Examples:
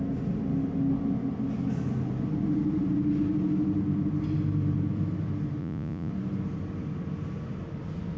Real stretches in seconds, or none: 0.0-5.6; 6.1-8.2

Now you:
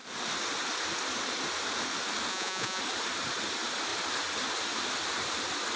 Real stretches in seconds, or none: 0.0-2.3; 2.8-5.8

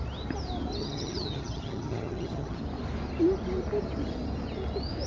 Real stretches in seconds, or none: 0.0-0.8; 2.6-5.1